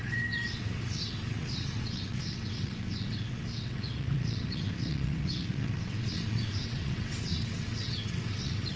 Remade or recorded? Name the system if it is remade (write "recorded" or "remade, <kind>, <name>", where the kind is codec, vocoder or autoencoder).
remade, vocoder, WaveNeXt